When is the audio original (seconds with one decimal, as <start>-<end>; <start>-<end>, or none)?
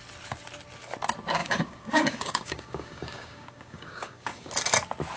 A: 0.0-1.4; 4.5-5.2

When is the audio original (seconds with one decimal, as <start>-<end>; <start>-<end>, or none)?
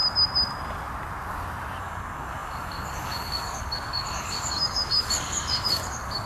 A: 0.0-1.8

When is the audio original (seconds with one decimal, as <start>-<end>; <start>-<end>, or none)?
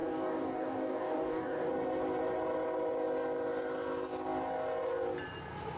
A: 1.7-5.8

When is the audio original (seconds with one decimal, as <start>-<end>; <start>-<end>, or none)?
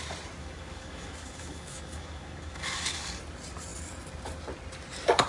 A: 0.0-0.4; 3.2-5.3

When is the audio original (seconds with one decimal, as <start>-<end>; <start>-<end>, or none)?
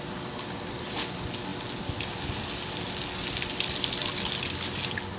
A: 0.0-5.2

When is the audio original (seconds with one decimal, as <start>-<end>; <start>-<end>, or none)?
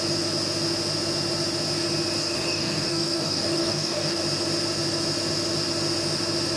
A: 0.0-2.2; 4.2-6.6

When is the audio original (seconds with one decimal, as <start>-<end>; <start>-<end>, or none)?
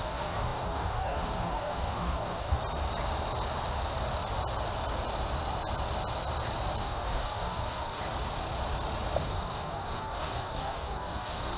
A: 2.6-6.8; 8.0-9.2